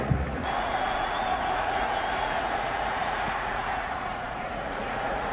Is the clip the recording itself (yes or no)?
no